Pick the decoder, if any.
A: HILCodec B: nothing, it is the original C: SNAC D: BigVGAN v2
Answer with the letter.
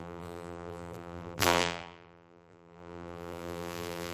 D